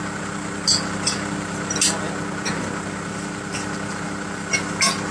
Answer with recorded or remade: recorded